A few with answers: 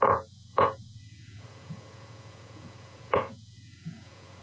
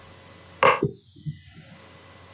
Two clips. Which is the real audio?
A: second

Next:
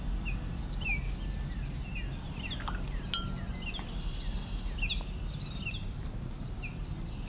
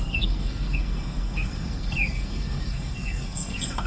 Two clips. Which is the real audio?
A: first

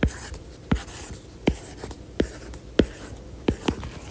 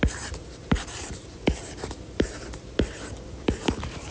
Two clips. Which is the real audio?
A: first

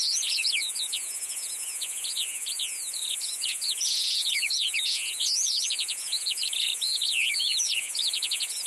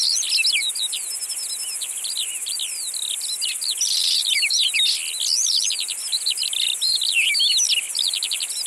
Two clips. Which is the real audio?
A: second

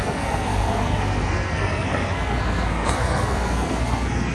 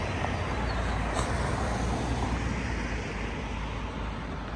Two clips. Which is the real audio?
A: second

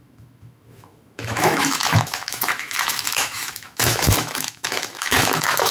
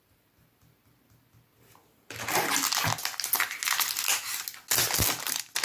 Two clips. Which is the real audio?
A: second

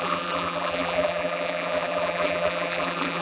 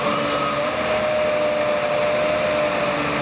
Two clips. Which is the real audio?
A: second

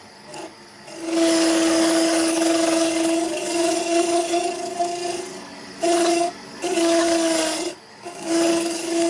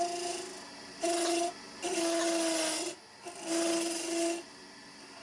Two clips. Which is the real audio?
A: second